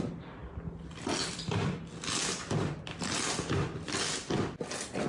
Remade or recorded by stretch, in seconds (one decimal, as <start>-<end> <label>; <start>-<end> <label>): 0.0-5.1 recorded